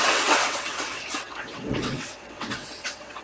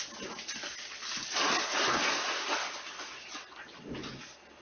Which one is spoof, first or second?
first